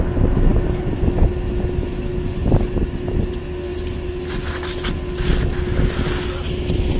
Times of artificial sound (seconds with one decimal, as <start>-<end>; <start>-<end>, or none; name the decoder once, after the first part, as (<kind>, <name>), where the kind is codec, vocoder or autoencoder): none